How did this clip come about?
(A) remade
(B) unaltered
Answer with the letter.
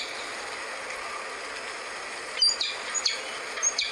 B